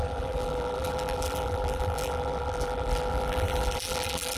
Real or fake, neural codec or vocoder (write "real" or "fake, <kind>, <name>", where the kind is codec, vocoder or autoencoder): fake, vocoder, BigVGAN v2